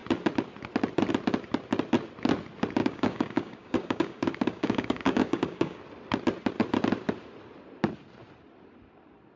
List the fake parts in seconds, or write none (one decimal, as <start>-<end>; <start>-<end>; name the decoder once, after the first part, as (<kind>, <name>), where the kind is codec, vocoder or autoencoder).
2.8-5.8 (codec, DAC)